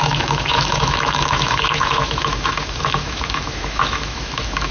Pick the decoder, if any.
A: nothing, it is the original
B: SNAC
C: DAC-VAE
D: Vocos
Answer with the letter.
C